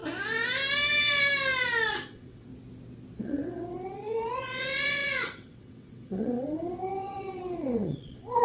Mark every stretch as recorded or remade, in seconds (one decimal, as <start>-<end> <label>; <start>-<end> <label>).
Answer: 0.0-1.9 recorded; 1.9-2.5 remade; 2.5-3.2 recorded; 3.2-8.4 remade